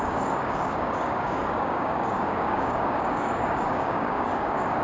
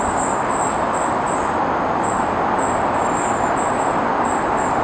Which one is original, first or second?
second